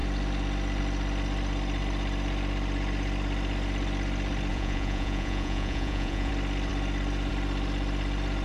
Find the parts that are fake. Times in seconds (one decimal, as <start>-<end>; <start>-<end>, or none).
4.5-6.3